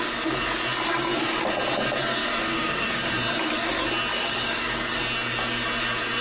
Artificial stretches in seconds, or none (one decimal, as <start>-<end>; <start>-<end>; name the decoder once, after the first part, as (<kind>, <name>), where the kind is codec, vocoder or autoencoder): 2.2-3.1 (codec, DAC); 4.1-5.0